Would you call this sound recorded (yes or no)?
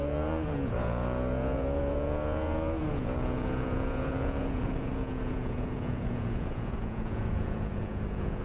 no